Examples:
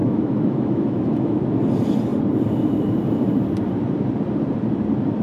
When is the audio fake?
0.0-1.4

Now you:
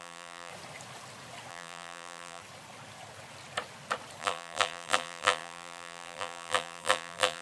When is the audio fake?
0.0-0.5; 1.5-2.4; 4.2-7.4

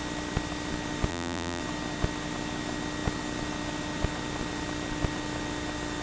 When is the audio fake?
1.1-1.6

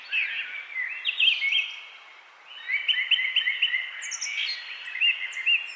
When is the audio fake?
none

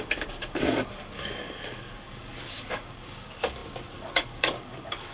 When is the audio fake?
0.0-5.1

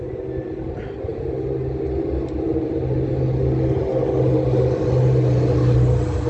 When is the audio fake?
none